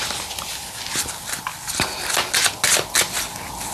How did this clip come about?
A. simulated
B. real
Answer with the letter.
B